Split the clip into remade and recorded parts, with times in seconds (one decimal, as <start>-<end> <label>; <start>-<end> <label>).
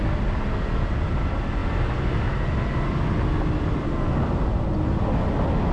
0.0-5.7 recorded